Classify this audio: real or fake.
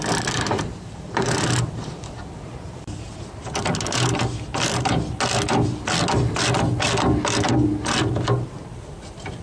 real